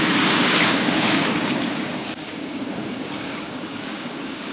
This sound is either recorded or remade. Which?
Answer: remade